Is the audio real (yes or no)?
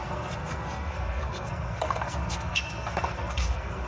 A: no